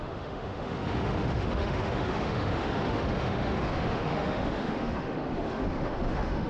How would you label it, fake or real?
fake